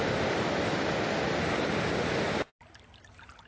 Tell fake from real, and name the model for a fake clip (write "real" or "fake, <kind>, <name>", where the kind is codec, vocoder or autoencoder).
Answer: real